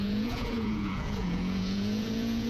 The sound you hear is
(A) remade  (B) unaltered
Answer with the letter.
A